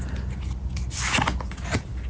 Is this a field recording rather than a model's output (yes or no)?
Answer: yes